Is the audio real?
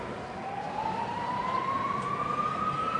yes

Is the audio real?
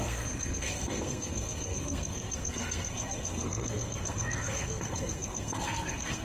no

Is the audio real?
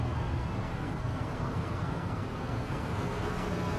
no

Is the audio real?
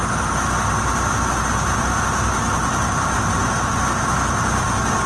yes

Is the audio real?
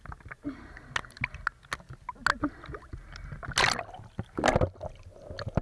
yes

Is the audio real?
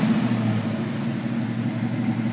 yes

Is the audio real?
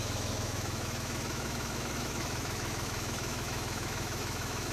no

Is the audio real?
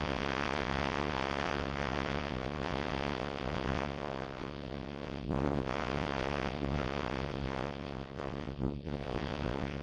no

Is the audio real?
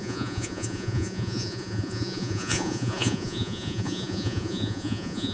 no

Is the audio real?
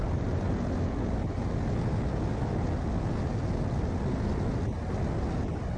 yes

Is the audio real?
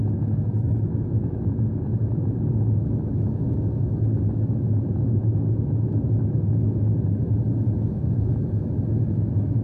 no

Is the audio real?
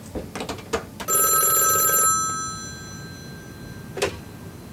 yes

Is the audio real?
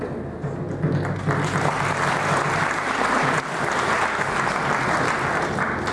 yes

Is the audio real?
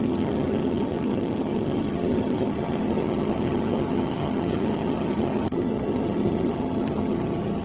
no